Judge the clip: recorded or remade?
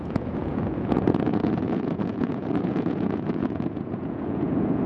remade